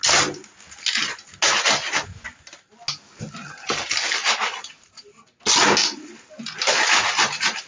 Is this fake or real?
real